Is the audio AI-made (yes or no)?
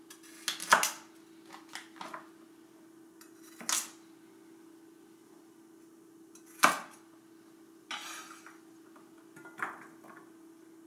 no